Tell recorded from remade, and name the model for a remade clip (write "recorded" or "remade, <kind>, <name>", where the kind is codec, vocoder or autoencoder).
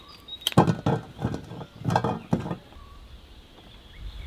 recorded